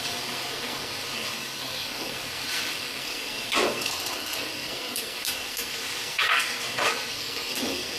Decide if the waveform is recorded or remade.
remade